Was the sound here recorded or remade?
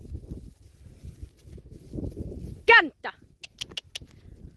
recorded